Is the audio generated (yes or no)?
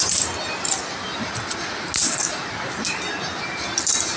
no